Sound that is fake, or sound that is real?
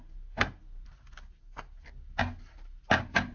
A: real